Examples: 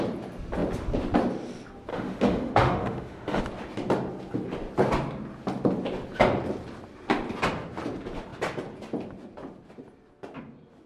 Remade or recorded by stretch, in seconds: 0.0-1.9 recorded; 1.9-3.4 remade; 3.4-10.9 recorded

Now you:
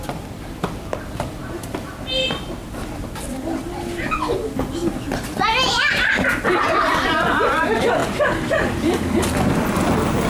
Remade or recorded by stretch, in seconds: 0.0-10.3 recorded

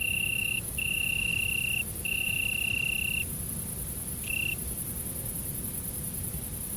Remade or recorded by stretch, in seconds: 0.0-1.3 remade; 1.3-1.9 recorded; 1.9-2.4 remade; 2.4-6.8 recorded

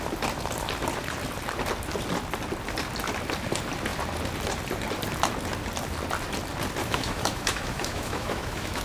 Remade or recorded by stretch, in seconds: 0.0-6.8 recorded; 6.8-8.8 remade